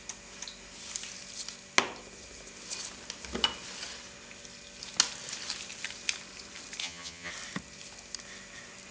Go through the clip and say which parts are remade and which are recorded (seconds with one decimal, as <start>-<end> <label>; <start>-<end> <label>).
0.0-6.8 recorded; 6.8-7.3 remade; 7.3-8.9 recorded